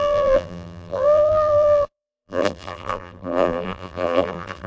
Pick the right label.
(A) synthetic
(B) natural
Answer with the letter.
A